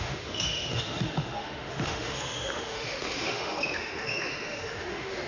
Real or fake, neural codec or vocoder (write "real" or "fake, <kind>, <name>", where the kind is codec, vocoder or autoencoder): fake, autoencoder, DAC-VAE